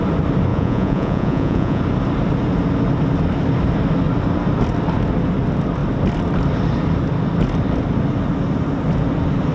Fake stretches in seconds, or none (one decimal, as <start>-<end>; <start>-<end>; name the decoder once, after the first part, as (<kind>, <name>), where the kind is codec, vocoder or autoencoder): 0.5-1.8 (vocoder, Vocos)